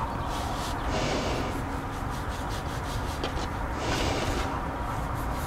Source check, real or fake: real